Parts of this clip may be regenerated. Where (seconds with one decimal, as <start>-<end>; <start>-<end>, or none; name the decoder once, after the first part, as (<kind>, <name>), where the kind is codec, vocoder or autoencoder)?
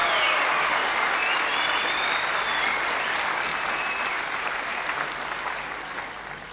0.0-2.1 (vocoder, BigVGAN v2); 3.5-5.1